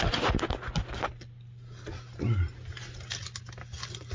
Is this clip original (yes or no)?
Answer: yes